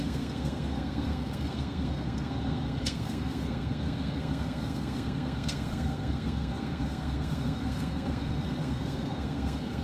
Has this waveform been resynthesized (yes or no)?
yes